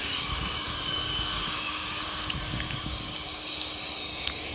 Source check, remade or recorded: remade